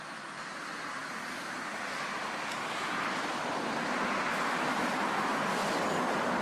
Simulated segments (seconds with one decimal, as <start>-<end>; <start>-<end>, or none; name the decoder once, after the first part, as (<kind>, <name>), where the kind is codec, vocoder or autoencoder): 1.0-2.6 (vocoder, BigVGAN v2)